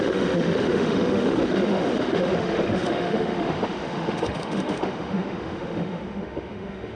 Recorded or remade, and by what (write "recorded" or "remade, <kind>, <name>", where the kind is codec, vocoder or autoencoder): remade, autoencoder, DAC-VAE